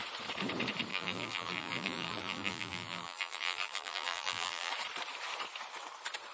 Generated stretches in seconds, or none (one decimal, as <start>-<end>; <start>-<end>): 0.9-4.7